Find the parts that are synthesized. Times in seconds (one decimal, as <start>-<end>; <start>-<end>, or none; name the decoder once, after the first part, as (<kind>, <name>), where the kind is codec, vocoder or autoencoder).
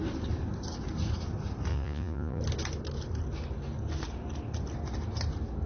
1.7-2.4 (vocoder, Vocos)